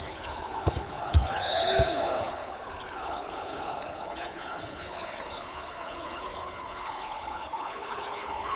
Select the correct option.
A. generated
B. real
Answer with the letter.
A